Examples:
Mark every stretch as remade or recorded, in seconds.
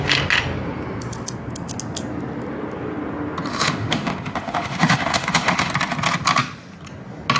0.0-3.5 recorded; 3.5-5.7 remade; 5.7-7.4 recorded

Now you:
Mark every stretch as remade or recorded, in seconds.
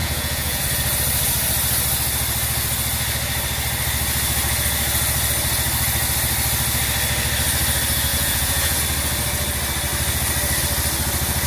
0.0-0.6 remade; 0.6-8.1 recorded; 8.1-8.8 remade; 8.8-11.5 recorded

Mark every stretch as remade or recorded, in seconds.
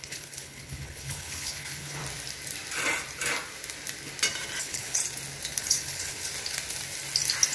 0.0-2.0 remade; 2.0-4.6 recorded; 4.6-5.0 remade; 5.0-5.6 recorded; 5.6-6.3 remade; 6.3-7.5 recorded